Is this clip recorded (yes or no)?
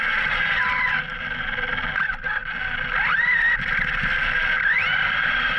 yes